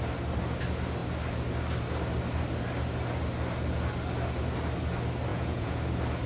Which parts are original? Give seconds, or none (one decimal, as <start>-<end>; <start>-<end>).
0.0-5.3; 5.8-6.3